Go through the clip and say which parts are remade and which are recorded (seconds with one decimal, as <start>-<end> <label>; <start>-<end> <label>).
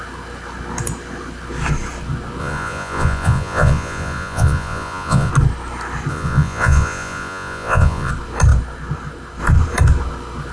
0.0-2.4 recorded; 2.4-5.3 remade; 5.3-6.1 recorded; 6.1-8.1 remade; 8.1-10.5 recorded